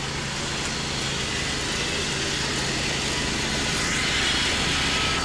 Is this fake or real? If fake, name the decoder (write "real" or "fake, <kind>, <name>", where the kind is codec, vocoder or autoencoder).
real